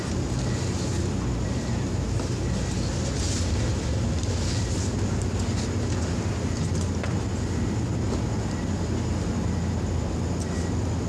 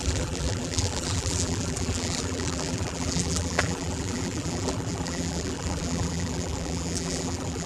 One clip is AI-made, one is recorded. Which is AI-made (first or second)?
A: second